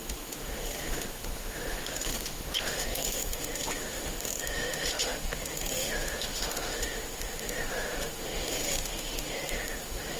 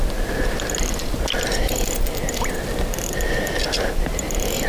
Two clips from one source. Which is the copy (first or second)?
first